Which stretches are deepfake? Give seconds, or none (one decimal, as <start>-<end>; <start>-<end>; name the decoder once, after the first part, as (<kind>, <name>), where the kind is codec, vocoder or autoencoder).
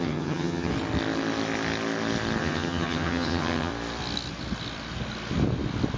0.0-0.7 (vocoder, HiFi-GAN); 2.4-3.7